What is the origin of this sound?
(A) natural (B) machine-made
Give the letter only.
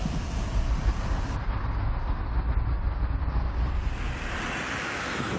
A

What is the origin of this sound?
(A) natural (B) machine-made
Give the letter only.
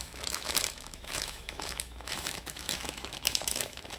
B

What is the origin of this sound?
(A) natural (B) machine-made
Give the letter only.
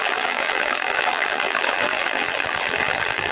B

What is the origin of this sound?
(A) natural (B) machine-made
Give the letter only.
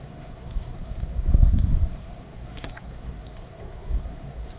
B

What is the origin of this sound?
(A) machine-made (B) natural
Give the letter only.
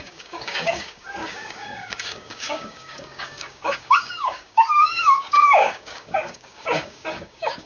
A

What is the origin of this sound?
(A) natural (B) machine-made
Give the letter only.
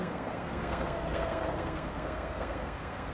B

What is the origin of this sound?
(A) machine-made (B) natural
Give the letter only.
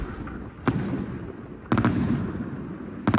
B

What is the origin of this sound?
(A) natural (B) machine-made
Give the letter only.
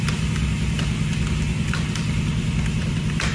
A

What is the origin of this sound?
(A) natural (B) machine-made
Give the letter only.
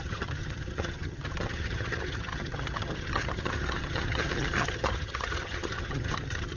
B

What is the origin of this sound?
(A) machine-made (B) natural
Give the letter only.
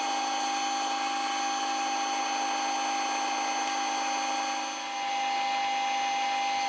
B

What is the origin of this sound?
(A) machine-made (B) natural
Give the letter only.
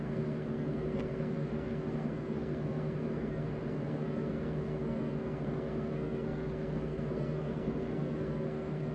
A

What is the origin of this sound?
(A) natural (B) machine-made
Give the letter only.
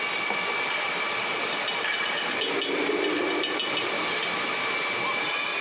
A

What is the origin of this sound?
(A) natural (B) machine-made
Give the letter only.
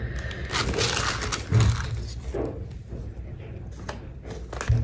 A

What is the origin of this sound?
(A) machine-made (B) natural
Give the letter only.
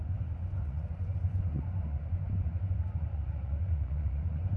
A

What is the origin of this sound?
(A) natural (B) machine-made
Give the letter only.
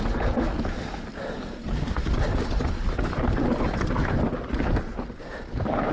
A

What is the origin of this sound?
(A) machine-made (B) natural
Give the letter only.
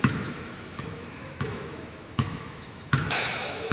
A